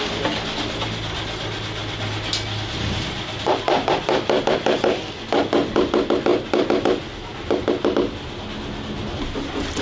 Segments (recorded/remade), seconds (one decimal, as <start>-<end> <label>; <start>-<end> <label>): 0.0-9.8 recorded